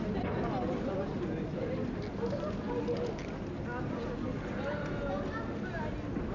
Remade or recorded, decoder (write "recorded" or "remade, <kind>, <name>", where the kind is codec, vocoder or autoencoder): recorded